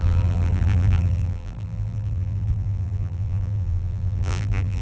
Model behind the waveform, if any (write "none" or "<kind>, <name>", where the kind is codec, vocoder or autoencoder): vocoder, BigVGAN v2